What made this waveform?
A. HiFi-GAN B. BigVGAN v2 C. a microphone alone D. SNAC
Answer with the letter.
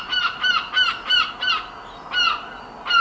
C